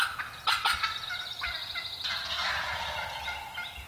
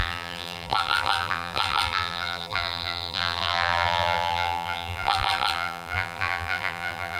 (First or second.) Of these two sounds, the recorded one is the first